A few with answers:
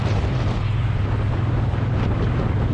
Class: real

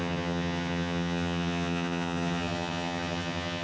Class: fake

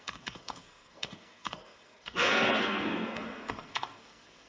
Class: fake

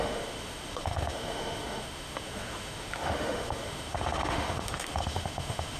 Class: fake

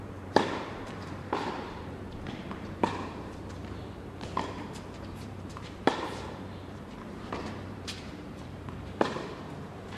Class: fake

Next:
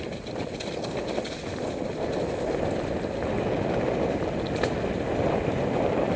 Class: real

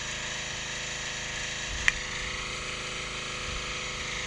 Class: real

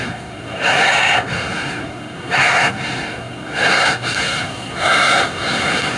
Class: fake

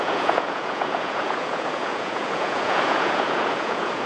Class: fake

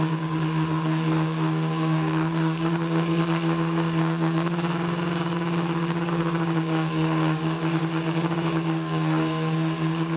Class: fake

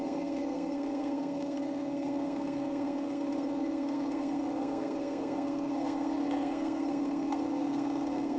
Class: fake